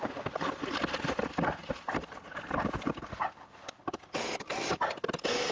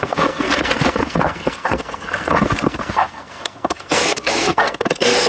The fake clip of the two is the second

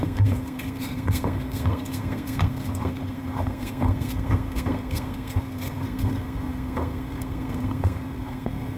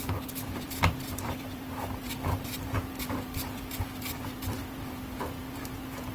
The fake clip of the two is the first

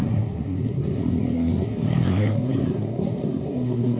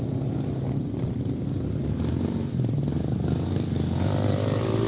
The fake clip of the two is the first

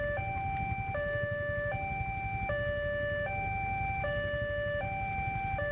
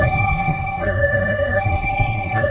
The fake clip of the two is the second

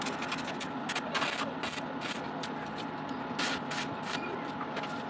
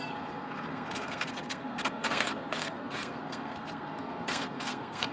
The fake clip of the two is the second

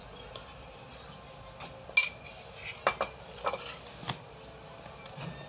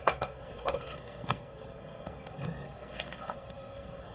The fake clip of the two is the second